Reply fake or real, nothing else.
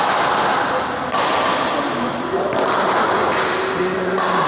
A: real